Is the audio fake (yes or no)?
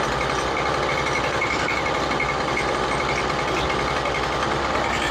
no